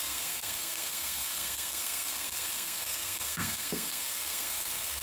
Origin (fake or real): fake